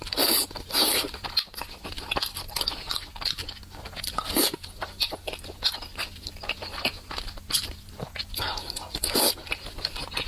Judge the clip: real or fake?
real